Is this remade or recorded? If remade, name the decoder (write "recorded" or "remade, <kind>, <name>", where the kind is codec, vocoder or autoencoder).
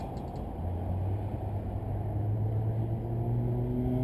recorded